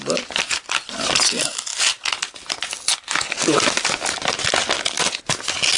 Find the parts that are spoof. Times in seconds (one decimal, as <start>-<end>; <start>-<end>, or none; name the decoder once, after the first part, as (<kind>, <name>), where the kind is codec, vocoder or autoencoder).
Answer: none